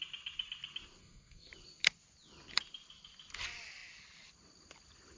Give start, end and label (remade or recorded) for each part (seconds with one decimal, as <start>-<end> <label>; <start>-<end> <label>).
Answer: 0.0-1.0 recorded; 1.0-1.5 remade; 1.5-5.2 recorded